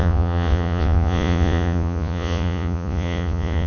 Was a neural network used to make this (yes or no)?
yes